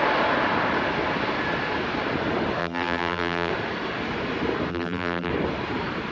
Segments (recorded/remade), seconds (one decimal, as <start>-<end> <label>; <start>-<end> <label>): 0.0-2.6 recorded; 2.6-3.5 remade; 3.5-4.7 recorded; 4.7-5.3 remade; 5.3-6.1 recorded

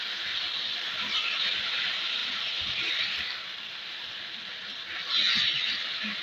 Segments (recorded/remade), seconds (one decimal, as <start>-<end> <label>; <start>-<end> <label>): 0.0-6.2 recorded

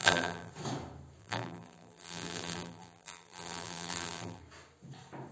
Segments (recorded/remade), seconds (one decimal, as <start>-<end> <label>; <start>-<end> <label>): 0.0-0.5 remade; 0.5-1.2 recorded; 1.2-4.4 remade; 4.4-5.3 recorded

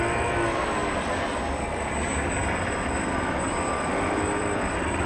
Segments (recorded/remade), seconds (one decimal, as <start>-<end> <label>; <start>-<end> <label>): 0.0-2.4 recorded; 2.4-5.1 remade